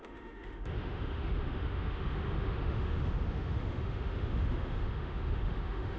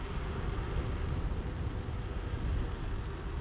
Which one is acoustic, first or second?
second